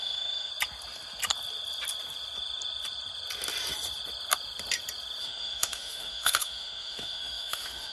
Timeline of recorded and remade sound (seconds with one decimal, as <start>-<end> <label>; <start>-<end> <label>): 0.0-0.5 remade; 0.5-5.2 recorded; 5.2-7.9 remade